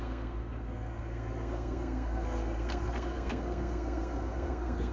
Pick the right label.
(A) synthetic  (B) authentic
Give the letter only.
A